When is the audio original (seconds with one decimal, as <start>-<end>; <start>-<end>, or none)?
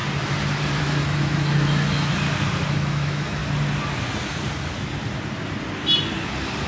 0.0-0.8; 2.1-2.7; 3.4-6.7